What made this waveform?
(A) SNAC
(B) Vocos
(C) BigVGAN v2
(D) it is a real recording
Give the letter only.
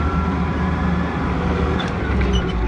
C